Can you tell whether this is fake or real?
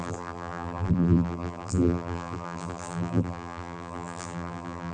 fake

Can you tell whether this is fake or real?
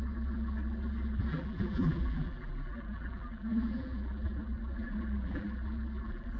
fake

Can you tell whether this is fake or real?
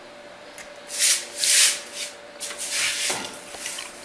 real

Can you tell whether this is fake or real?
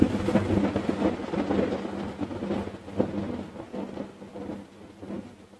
real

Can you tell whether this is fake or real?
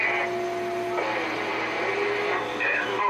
real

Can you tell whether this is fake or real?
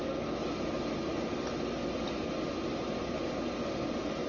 real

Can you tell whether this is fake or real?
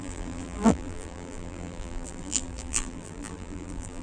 fake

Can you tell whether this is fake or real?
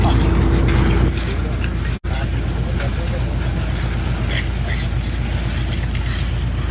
real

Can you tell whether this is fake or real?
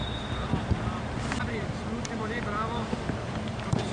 fake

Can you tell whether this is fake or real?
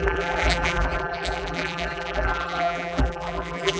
fake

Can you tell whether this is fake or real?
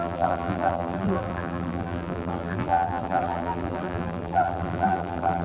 fake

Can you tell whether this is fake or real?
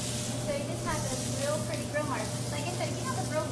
real